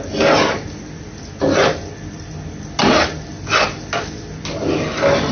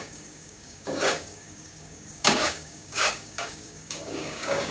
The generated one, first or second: second